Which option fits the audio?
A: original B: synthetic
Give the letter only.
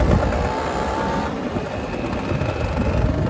B